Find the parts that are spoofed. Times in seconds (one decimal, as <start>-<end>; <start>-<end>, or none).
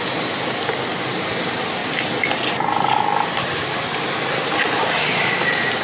none